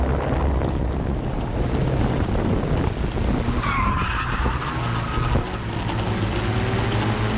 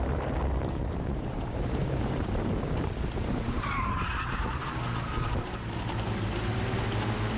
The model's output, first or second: second